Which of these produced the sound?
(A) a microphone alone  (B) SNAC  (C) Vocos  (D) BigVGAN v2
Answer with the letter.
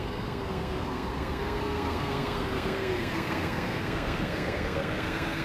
B